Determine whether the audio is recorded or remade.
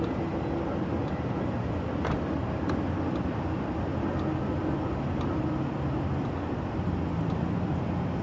recorded